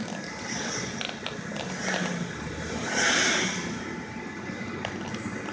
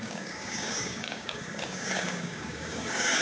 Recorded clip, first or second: first